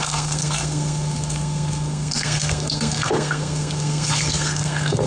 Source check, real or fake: fake